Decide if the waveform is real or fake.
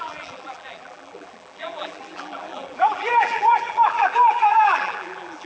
fake